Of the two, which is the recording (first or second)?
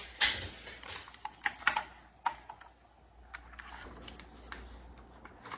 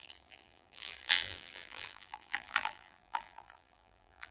first